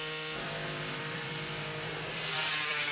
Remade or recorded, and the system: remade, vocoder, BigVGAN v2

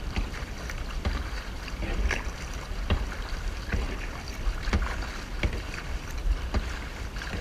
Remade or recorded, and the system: remade, vocoder, BigVGAN v2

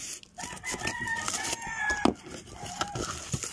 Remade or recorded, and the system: recorded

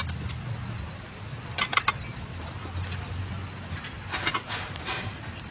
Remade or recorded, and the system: recorded